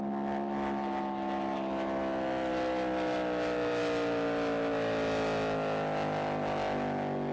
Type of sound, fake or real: real